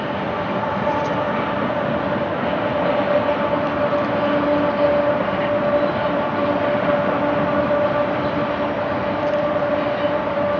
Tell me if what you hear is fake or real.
real